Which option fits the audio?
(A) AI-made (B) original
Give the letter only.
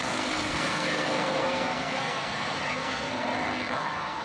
A